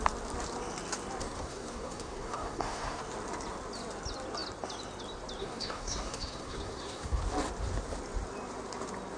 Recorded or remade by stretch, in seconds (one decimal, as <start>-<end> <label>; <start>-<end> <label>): 0.0-1.2 recorded; 1.2-3.0 remade; 3.0-5.4 recorded; 5.4-7.2 remade; 7.2-9.2 recorded